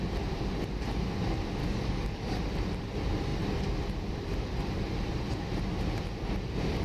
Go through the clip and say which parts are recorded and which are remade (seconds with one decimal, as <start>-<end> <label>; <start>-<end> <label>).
0.0-1.6 recorded; 1.6-2.4 remade; 2.4-6.8 recorded

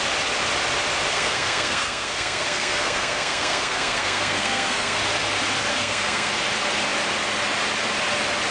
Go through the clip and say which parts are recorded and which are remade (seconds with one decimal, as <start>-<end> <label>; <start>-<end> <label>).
0.0-1.1 recorded; 1.1-5.0 remade; 5.0-5.7 recorded; 5.7-6.3 remade; 6.3-8.5 recorded

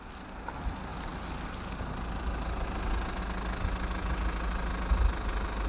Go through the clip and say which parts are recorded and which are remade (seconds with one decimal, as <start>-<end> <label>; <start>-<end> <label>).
0.0-5.7 recorded